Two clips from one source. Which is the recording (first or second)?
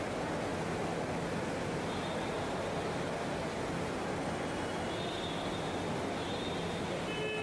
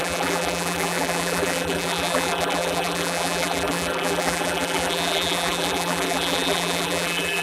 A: first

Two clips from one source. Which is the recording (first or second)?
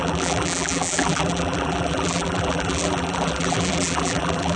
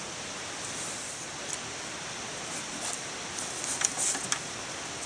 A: second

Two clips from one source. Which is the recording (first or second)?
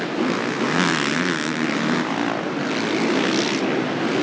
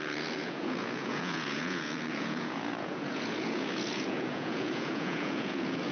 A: first